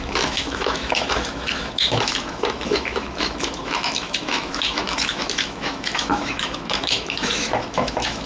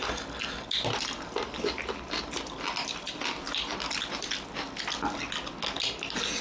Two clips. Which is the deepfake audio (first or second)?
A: first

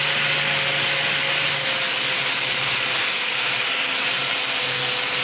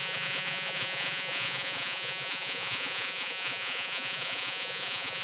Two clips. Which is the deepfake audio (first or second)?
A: second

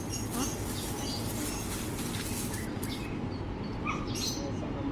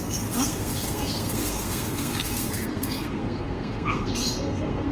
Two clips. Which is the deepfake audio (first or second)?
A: second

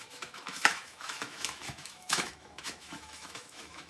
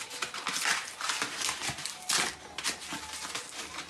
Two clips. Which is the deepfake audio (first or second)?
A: first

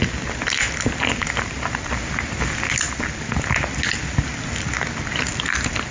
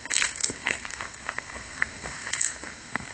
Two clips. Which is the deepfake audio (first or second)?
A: second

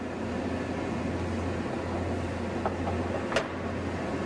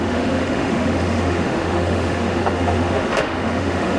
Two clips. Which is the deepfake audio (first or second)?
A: second